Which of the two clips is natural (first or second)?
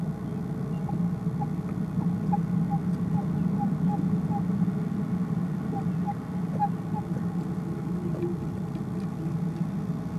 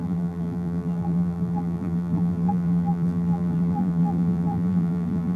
first